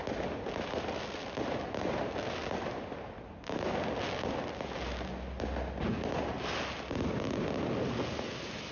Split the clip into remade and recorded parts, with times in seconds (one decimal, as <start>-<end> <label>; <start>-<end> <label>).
0.0-8.7 recorded

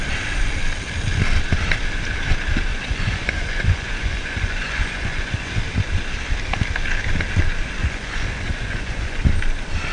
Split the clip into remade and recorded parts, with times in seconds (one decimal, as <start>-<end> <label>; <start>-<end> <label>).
0.0-2.7 recorded; 2.7-5.6 remade; 5.6-7.8 recorded; 7.8-9.2 remade; 9.2-9.9 recorded

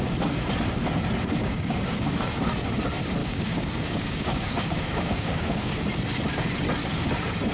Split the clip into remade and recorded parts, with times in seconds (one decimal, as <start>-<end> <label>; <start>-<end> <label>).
0.0-1.4 recorded; 1.4-2.4 remade; 2.4-3.2 recorded; 3.2-5.8 remade; 5.8-7.5 recorded

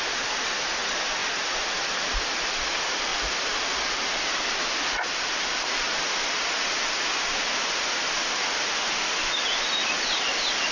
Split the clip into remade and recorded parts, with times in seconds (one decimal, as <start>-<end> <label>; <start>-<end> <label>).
0.0-10.7 recorded

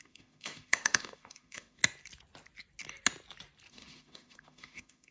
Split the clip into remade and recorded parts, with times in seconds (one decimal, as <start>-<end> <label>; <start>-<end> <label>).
0.0-1.8 remade; 1.8-3.7 recorded; 3.7-5.1 remade

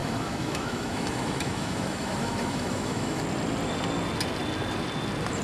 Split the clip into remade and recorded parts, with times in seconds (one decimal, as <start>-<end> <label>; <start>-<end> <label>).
0.0-3.2 remade; 3.2-5.4 recorded